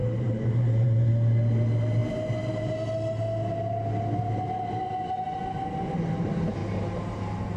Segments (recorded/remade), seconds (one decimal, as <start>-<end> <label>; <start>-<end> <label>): 0.0-1.1 remade; 1.1-6.6 recorded; 6.6-7.6 remade